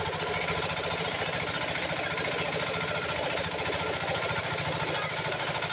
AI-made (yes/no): no